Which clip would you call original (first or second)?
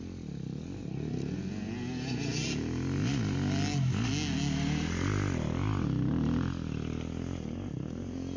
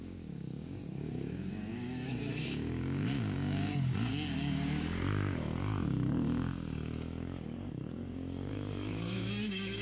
first